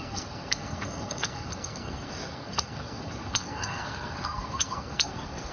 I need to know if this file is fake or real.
fake